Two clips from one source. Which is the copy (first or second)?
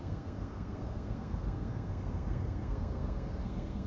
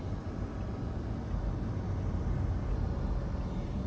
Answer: first